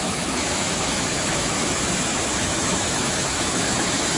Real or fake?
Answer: fake